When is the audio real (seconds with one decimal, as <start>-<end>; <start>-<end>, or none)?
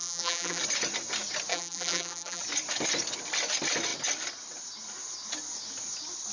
0.6-1.5; 2.4-6.3